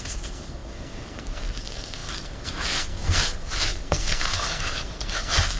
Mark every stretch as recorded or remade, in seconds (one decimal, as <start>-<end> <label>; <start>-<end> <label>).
0.0-5.6 remade